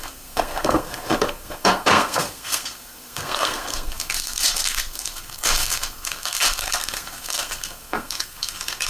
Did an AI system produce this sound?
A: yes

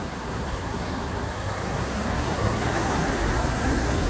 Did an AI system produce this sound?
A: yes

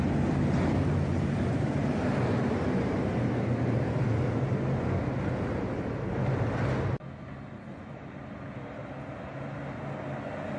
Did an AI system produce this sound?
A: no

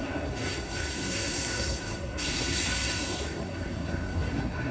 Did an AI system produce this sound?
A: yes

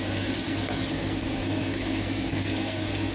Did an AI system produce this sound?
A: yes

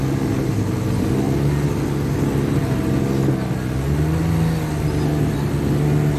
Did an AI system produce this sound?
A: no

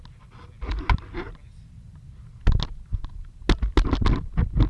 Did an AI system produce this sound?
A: no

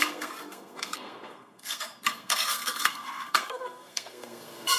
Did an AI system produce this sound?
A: yes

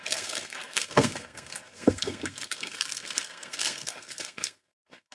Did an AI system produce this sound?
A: yes